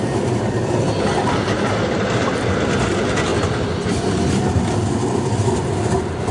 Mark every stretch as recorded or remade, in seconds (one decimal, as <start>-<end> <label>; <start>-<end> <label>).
0.0-6.3 recorded